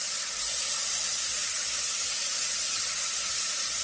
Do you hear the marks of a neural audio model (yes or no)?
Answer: no